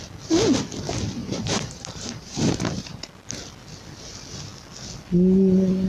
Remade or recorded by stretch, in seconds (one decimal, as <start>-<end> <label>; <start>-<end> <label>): 0.0-1.2 recorded; 1.2-3.0 remade; 3.0-5.9 recorded